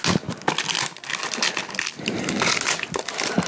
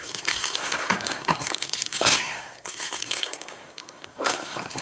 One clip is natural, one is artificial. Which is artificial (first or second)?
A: second